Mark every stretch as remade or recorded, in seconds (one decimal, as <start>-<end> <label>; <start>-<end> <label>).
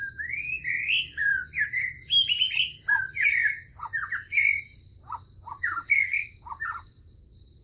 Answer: 0.0-7.6 recorded